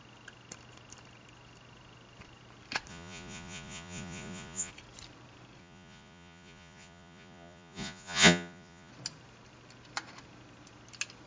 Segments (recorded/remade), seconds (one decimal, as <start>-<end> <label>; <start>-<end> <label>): 0.0-2.9 recorded; 2.9-4.7 remade; 4.7-5.6 recorded; 5.6-8.9 remade; 8.9-11.3 recorded